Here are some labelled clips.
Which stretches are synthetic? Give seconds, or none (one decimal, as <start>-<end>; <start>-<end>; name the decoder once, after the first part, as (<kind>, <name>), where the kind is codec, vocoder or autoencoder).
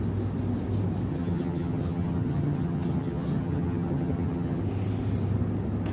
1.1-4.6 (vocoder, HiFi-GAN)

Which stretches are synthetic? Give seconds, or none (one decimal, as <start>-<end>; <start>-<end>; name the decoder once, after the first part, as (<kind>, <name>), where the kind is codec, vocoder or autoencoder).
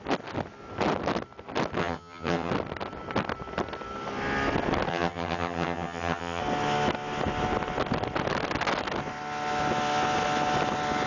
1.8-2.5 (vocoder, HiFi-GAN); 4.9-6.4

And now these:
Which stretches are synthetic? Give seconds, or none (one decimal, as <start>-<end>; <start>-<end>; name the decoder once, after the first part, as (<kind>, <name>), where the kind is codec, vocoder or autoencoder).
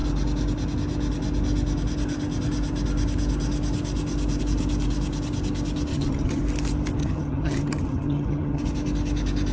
5.9-6.4 (vocoder, HiFi-GAN); 7.0-8.6